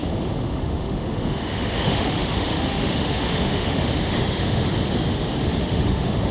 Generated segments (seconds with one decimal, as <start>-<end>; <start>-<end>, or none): 0.0-4.6; 5.4-6.3